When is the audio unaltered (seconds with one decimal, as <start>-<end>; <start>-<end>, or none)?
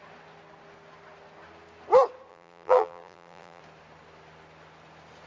0.0-2.3; 3.6-5.3